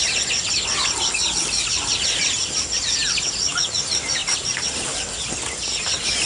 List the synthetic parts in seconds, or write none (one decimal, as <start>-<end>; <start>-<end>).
none